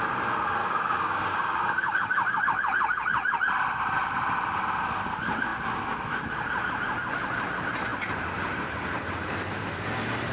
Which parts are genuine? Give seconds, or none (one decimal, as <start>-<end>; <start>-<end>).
0.0-0.6; 2.4-10.3